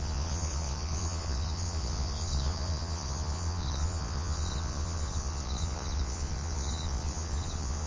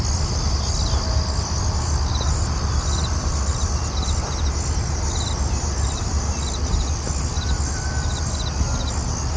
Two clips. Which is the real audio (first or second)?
second